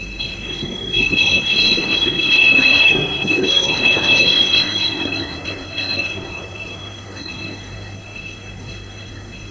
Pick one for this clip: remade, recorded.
remade